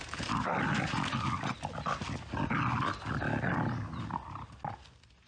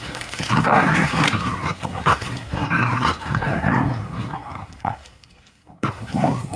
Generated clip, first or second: second